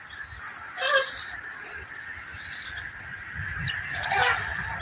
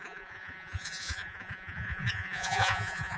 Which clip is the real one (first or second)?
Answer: first